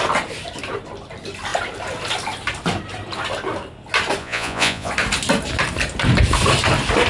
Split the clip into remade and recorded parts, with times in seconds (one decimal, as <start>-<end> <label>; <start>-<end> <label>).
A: 0.0-4.2 recorded; 4.2-4.9 remade; 4.9-7.1 recorded